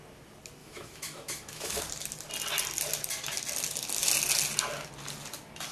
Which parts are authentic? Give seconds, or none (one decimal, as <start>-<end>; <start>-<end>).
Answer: 0.0-0.6; 1.8-5.7

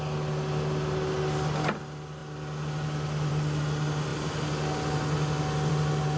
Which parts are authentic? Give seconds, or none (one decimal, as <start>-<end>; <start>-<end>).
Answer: 0.0-6.2